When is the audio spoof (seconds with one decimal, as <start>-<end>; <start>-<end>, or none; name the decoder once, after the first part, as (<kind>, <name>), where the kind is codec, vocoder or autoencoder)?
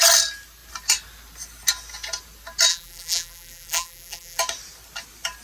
2.7-4.4 (vocoder, BigVGAN v2)